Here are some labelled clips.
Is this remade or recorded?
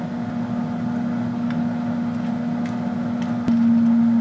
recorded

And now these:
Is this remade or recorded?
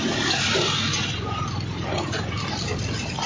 recorded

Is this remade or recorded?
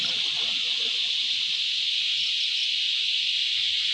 recorded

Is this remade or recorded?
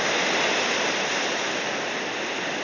recorded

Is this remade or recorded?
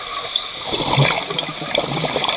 recorded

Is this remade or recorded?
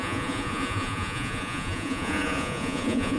remade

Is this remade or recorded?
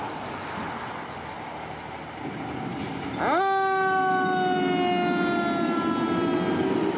recorded